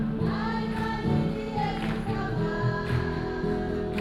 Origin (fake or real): real